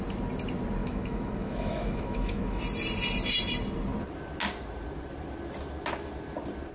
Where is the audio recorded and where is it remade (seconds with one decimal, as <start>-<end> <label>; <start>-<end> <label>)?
0.0-0.8 recorded; 0.8-2.6 remade; 2.6-6.7 recorded